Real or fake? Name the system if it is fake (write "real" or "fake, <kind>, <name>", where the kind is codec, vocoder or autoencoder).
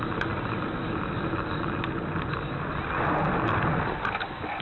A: real